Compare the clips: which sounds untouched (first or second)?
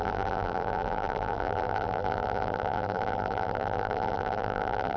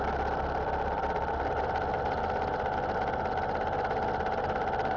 second